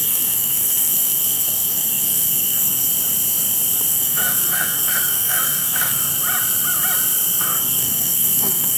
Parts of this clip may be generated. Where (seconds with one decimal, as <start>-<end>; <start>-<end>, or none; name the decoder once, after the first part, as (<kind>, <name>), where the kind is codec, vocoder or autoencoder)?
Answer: 0.0-2.9 (codec, SNAC); 3.9-6.1; 7.4-8.8